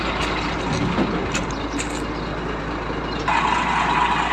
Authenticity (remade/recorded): recorded